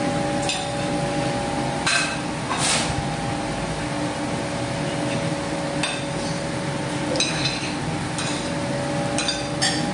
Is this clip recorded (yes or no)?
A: yes